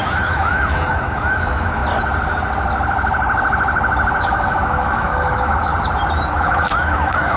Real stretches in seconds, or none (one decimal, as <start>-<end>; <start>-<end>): 1.8-4.2; 5.7-6.3